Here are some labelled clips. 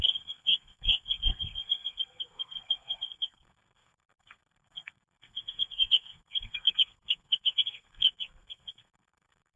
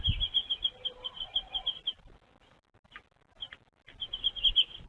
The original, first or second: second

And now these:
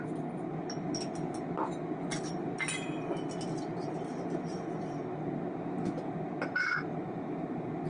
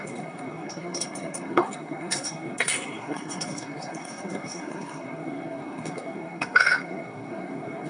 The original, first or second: first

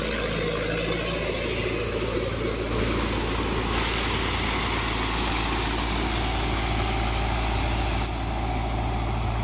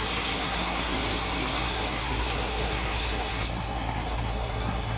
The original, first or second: first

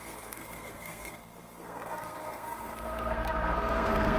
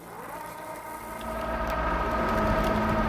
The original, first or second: second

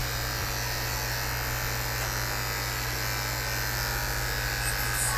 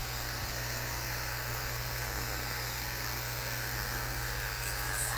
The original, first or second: first